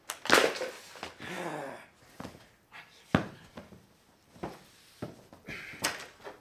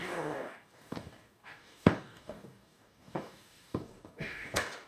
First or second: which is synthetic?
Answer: second